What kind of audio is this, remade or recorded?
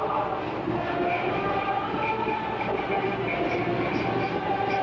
recorded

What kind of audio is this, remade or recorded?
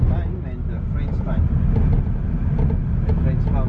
recorded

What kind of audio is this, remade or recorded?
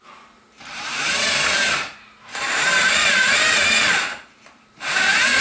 remade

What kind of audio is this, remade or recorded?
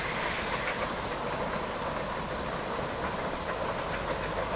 recorded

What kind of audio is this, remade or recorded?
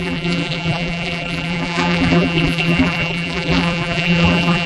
remade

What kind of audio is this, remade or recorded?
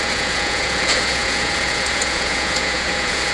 remade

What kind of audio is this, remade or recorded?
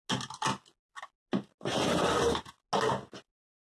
recorded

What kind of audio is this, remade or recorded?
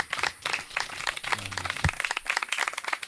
recorded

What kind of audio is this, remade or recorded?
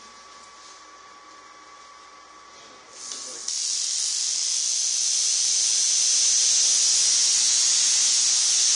recorded